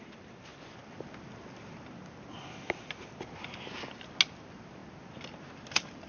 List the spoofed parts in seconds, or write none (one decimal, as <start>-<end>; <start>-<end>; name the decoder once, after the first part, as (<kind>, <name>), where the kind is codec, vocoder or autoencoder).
none